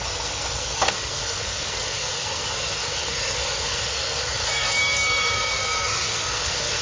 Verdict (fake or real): fake